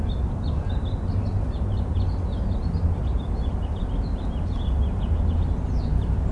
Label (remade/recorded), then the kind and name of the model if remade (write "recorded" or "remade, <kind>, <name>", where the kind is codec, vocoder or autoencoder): recorded